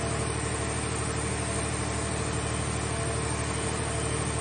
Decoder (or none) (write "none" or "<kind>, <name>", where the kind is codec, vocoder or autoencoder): none